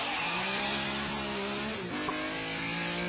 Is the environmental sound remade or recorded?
recorded